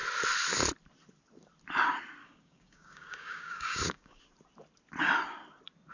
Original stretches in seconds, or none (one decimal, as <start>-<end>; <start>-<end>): 0.0-2.2; 4.2-5.9

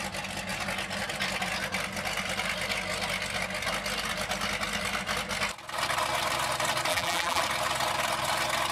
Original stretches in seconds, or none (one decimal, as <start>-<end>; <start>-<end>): 0.0-6.9; 7.4-8.7

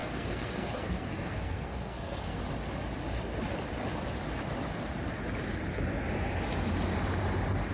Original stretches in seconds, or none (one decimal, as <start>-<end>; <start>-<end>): 2.4-7.7

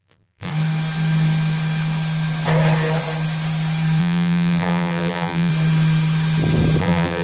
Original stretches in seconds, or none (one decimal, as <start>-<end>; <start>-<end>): 0.5-4.0; 5.5-6.8

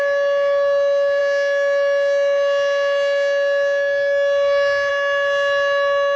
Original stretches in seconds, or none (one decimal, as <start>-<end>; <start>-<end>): 0.0-6.2

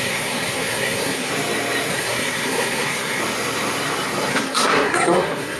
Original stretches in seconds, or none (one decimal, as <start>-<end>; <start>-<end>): 1.3-1.9; 3.2-4.3

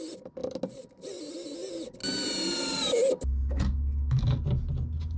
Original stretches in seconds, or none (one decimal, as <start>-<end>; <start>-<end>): 0.0-5.2